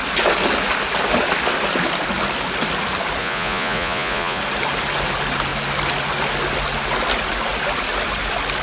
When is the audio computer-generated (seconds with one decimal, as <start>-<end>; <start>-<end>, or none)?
3.2-4.4